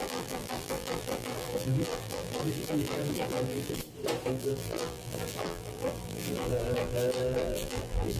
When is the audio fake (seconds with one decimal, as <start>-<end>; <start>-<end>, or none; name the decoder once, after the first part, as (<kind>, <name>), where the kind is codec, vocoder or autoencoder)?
0.0-3.8 (vocoder, BigVGAN v2); 4.3-8.2